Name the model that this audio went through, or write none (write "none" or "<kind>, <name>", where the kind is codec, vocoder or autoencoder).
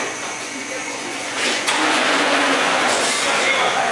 vocoder, Vocos